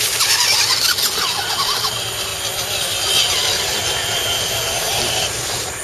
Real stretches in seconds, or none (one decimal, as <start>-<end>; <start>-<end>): 0.0-4.9